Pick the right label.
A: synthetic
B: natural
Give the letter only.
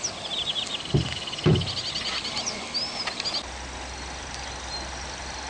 B